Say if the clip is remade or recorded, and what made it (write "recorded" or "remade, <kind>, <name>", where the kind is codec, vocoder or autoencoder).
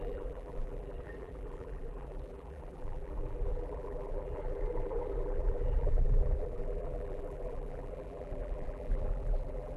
remade, vocoder, BigVGAN v2